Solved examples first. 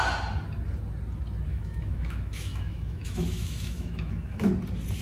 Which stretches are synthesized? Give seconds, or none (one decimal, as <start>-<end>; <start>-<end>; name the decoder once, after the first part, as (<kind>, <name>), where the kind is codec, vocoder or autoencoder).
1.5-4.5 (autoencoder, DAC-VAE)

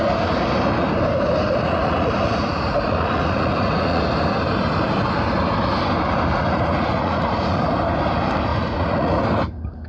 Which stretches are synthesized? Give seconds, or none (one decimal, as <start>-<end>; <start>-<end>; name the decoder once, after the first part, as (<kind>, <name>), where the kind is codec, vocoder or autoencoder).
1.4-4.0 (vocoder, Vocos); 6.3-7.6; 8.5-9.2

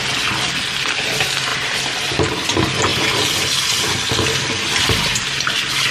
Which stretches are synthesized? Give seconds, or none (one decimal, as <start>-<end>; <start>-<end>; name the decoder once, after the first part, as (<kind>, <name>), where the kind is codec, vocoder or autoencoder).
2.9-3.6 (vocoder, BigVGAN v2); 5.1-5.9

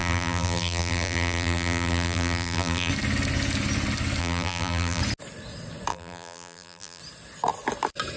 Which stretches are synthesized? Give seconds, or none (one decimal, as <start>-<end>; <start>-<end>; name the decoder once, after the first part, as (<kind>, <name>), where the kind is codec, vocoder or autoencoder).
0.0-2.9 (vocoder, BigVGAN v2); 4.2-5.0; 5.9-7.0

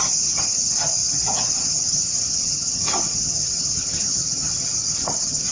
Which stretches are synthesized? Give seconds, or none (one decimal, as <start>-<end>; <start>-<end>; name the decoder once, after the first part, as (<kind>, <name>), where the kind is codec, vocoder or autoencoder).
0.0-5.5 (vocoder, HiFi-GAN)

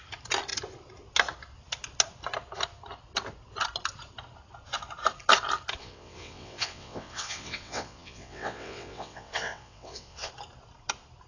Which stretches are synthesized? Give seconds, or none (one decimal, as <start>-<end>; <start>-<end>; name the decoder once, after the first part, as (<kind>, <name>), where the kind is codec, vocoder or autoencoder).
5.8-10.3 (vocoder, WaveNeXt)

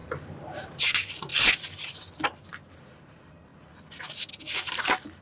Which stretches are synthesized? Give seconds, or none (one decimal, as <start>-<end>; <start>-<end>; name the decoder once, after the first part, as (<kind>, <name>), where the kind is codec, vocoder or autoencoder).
0.0-1.3 (vocoder, BigVGAN v2); 2.5-3.5; 4.3-5.2